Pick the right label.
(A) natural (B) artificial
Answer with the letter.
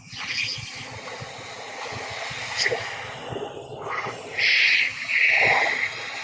A